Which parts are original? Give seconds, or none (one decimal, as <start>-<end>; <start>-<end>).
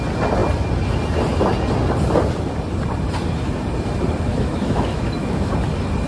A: 0.0-4.3; 5.5-6.1